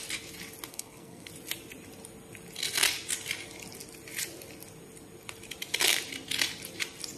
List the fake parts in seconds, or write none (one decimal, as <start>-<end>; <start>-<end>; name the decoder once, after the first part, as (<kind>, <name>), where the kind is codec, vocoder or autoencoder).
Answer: 0.7-1.3 (codec, SNAC)